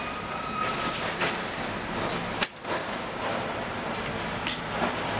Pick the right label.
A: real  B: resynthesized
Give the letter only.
A